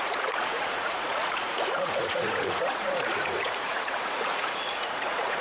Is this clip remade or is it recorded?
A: remade